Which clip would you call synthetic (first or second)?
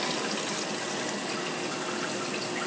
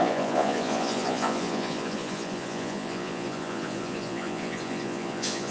second